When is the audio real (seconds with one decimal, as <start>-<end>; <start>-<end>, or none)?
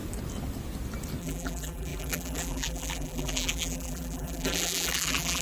0.0-1.2